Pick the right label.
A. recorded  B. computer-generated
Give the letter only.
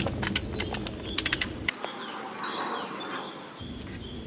A